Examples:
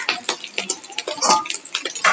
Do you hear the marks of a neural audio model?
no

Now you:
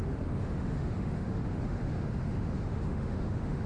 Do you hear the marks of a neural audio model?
yes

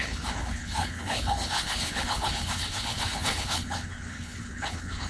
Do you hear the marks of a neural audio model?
yes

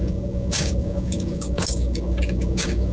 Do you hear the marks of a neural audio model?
yes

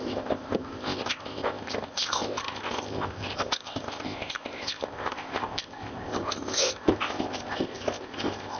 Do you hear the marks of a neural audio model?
yes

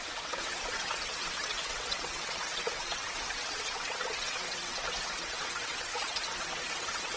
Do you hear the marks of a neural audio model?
yes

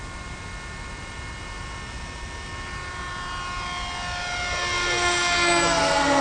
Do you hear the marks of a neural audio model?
no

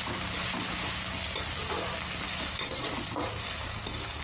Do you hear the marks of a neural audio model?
no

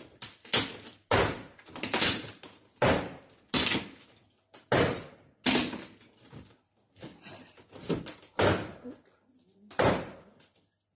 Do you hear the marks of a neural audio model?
no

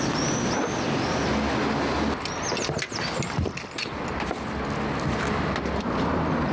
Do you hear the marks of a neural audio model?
no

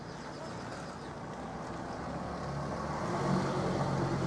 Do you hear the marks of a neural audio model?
no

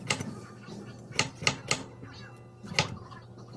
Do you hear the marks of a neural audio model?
no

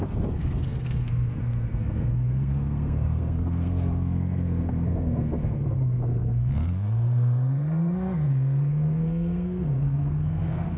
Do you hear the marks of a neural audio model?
yes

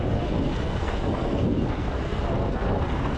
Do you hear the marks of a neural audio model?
yes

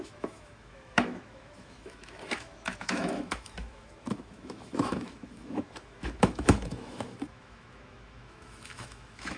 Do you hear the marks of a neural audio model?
yes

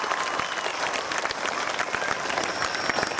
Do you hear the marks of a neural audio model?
no